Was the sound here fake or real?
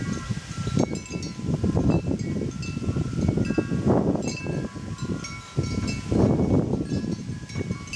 real